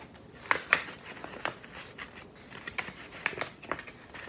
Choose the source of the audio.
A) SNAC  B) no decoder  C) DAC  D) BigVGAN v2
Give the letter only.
B